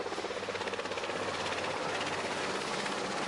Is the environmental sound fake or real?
real